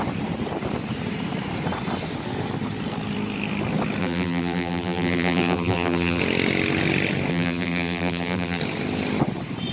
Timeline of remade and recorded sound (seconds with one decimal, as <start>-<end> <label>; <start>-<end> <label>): 0.0-4.0 recorded; 4.0-6.2 remade; 6.2-7.3 recorded; 7.3-8.6 remade; 8.6-9.7 recorded